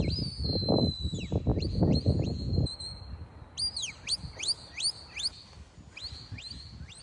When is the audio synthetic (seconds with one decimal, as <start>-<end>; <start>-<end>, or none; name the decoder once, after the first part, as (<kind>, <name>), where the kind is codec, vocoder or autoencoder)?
1.5-3.0 (vocoder, Vocos)